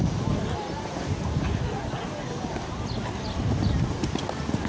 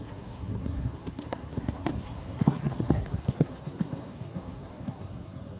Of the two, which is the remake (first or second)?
second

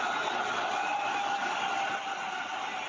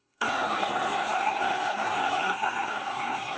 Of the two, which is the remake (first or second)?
second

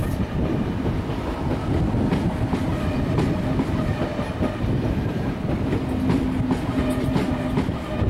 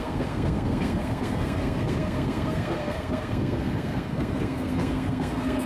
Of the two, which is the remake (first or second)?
second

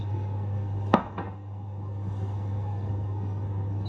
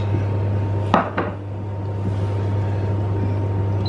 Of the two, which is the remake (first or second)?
first